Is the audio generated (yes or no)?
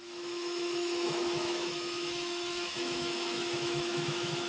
yes